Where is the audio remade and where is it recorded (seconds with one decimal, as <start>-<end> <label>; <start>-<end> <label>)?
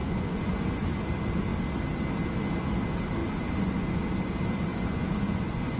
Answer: 0.0-1.0 remade; 1.0-3.2 recorded; 3.2-4.0 remade; 4.0-4.7 recorded; 4.7-5.8 remade